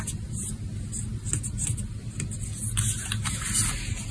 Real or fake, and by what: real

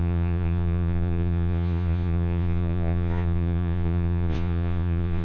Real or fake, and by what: fake, vocoder, Vocos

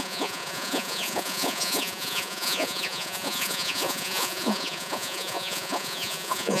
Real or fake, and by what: fake, vocoder, Vocos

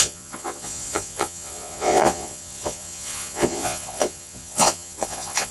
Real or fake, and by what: fake, vocoder, Vocos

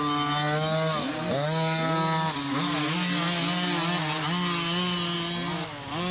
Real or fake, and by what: real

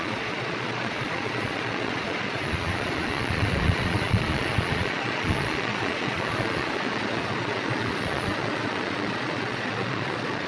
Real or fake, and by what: fake, vocoder, Vocos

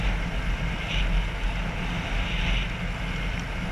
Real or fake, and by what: real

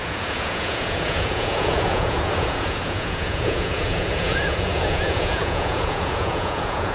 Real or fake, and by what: fake, vocoder, Vocos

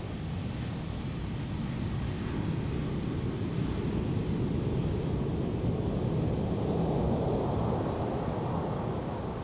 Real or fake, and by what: real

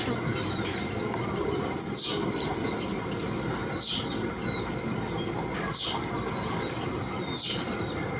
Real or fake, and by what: real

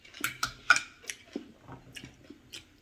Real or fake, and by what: real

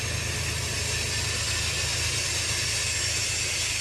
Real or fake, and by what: real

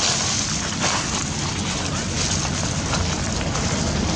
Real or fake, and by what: real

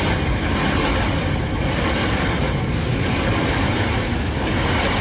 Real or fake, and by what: real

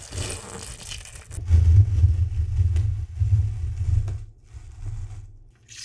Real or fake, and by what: real